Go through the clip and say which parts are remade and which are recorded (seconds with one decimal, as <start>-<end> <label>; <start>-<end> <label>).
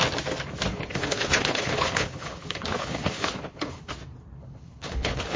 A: 0.0-0.7 recorded; 0.7-3.9 remade; 3.9-4.4 recorded; 4.4-5.4 remade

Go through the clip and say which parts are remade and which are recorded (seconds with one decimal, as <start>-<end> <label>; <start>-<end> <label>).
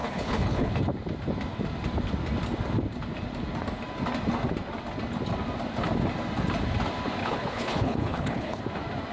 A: 0.0-0.7 remade; 0.7-7.2 recorded; 7.2-8.6 remade; 8.6-9.1 recorded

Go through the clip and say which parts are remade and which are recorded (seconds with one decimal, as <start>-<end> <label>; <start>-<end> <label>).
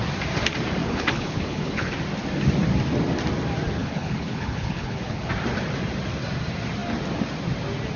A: 0.0-0.8 recorded; 0.8-1.9 remade; 1.9-3.8 recorded; 3.8-5.3 remade; 5.3-8.0 recorded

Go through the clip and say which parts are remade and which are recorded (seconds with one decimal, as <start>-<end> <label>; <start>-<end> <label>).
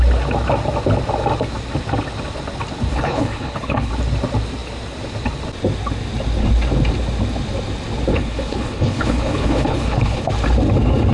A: 0.0-2.9 recorded; 2.9-3.9 remade; 3.9-8.1 recorded; 8.1-10.3 remade; 10.3-11.1 recorded